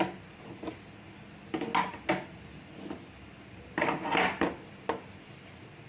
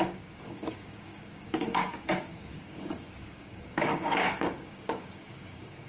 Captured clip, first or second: first